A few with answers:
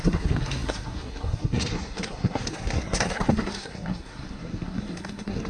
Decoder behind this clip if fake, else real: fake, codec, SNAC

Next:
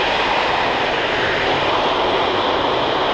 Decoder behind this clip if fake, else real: real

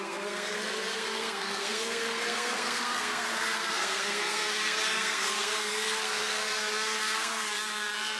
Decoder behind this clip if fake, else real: fake, codec, SNAC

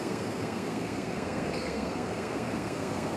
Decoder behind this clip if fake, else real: fake, codec, SNAC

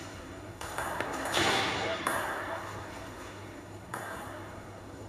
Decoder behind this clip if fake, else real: fake, codec, SNAC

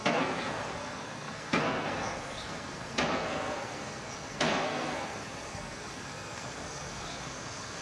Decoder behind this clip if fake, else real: fake, codec, SNAC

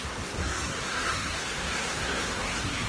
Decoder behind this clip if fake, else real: fake, codec, SNAC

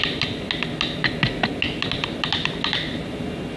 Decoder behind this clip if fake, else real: real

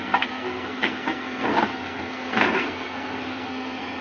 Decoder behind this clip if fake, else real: fake, codec, SNAC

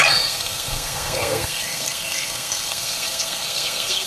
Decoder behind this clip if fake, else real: fake, codec, SNAC